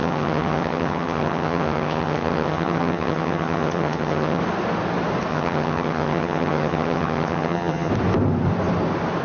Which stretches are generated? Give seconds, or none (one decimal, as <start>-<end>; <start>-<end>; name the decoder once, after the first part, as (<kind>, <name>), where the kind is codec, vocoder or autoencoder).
0.0-4.4 (vocoder, HiFi-GAN); 5.3-7.9